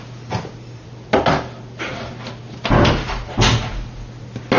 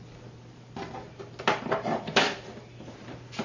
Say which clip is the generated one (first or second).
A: second